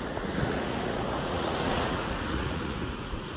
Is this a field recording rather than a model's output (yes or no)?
no